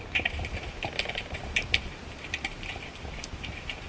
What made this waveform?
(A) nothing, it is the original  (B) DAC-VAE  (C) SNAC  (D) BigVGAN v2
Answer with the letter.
D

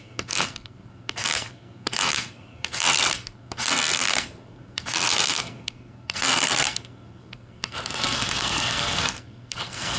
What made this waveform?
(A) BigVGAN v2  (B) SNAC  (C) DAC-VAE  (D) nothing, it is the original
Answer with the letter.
B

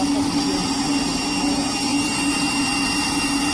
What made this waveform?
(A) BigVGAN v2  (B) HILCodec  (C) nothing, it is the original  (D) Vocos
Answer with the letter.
C